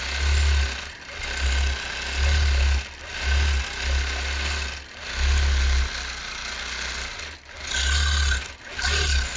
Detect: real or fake real